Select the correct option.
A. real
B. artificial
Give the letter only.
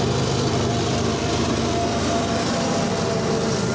B